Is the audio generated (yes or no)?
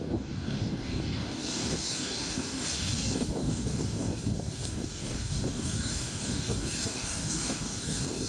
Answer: yes